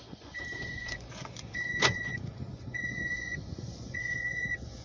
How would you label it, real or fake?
fake